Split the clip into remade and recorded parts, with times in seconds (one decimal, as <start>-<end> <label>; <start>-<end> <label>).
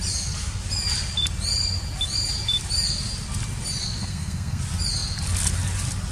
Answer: 0.0-4.0 recorded; 4.0-4.6 remade; 4.6-6.1 recorded